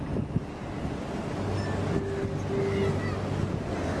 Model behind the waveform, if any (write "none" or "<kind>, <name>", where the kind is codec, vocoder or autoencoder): none